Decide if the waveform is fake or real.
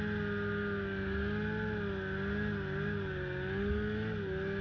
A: real